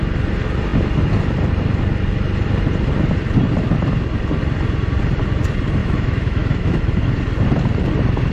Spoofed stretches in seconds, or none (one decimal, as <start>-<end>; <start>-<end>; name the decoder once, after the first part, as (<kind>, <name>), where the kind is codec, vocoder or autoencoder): 5.8-6.8 (autoencoder, DAC-VAE)